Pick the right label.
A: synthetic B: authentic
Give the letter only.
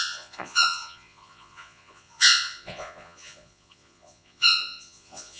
A